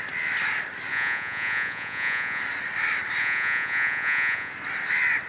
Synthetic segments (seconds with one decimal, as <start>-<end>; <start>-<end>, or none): 0.9-2.4; 3.2-4.5